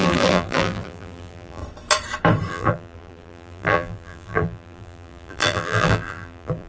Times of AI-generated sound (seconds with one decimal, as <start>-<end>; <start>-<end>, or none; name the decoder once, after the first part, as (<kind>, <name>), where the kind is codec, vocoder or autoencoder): 0.0-1.6 (vocoder, BigVGAN v2); 2.5-6.7

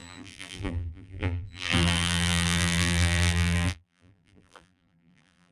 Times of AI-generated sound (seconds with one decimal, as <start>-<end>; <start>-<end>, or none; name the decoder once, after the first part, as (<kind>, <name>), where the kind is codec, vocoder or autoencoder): 0.0-5.5 (vocoder, BigVGAN v2)

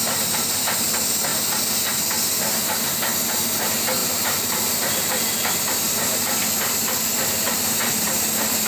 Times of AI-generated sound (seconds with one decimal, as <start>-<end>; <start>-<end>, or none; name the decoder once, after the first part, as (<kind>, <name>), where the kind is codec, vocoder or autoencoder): 4.0-5.5 (vocoder, BigVGAN v2)

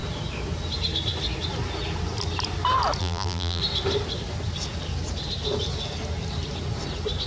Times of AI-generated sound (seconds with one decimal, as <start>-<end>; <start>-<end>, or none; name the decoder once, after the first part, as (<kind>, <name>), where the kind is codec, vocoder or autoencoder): 3.0-3.6 (vocoder, BigVGAN v2)

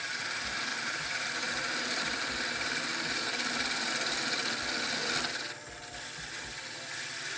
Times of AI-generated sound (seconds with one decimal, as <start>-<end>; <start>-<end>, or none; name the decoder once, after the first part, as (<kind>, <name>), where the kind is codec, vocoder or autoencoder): 0.7-2.8 (vocoder, BigVGAN v2); 3.2-3.9

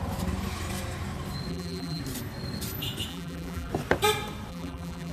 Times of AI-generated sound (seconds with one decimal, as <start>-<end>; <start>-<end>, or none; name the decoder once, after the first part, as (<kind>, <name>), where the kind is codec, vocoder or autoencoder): 1.5-2.0 (vocoder, BigVGAN v2); 3.1-3.7; 4.5-5.1

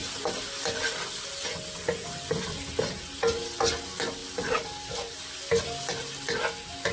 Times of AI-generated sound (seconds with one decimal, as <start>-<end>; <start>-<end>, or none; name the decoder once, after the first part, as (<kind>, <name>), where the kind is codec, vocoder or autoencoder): none

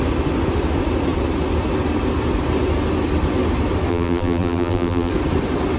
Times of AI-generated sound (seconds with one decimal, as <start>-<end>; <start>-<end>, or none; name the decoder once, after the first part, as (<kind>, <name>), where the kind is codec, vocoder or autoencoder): 3.9-5.1 (vocoder, BigVGAN v2)